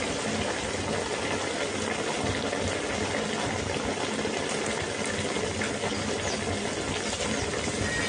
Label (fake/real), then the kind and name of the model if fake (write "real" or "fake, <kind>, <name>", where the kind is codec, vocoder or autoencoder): real